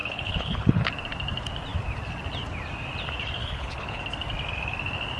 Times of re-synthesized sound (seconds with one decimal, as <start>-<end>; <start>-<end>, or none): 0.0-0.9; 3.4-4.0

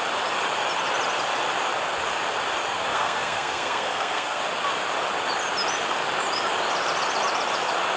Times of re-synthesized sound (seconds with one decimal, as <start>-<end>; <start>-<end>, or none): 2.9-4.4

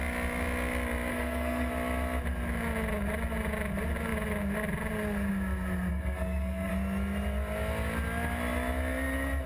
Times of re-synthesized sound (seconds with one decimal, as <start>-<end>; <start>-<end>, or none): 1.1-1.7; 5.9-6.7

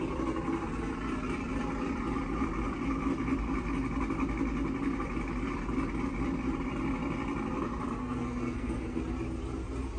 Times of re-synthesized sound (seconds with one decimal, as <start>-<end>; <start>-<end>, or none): 8.0-9.0

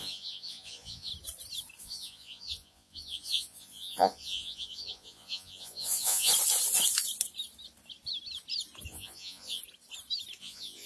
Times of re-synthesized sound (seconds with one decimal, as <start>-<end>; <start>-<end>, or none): 0.0-1.1; 1.8-6.3; 8.9-9.6; 10.4-10.9

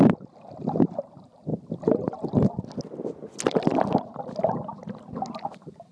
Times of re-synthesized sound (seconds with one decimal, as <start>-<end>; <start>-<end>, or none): none